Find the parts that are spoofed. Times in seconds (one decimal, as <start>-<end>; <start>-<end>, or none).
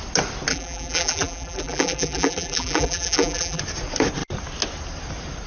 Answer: 0.5-3.6